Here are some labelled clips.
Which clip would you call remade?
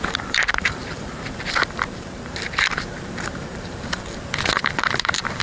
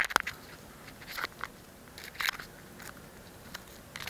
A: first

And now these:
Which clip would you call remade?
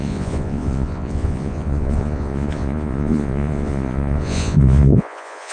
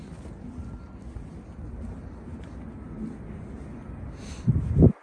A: first